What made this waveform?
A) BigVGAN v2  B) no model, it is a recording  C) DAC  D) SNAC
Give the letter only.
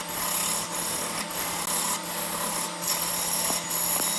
B